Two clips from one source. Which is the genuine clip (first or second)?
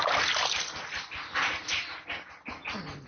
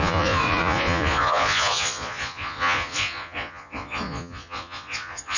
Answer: first